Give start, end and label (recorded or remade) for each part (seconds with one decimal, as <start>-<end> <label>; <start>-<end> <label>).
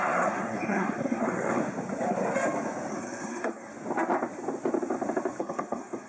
0.0-1.6 remade; 1.6-2.9 recorded; 2.9-3.7 remade; 3.7-5.4 recorded; 5.4-6.1 remade